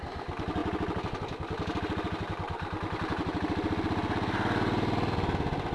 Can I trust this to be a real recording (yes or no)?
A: yes